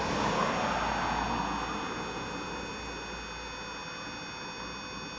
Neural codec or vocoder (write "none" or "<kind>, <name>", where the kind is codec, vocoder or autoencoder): none